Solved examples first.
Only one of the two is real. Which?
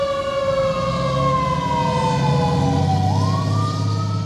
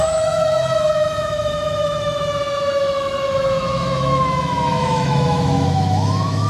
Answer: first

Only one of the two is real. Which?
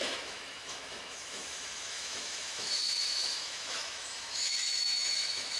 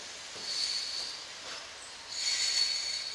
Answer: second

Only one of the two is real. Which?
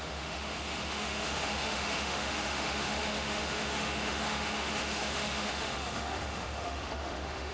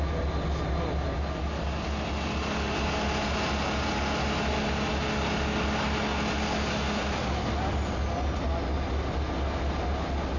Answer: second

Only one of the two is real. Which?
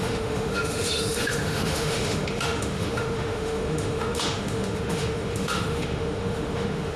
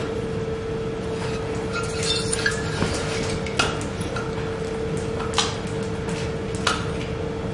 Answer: second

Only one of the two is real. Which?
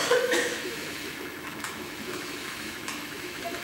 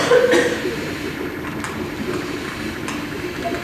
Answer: second